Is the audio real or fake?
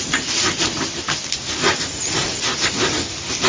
fake